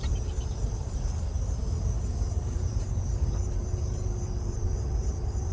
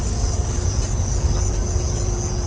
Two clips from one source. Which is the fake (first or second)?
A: first